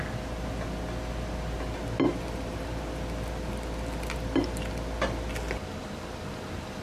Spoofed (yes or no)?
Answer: no